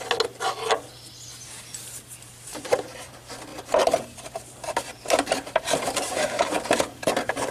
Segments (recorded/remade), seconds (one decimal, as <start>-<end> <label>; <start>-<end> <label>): 0.0-2.5 recorded; 2.5-3.1 remade; 3.1-3.5 recorded; 3.5-7.5 remade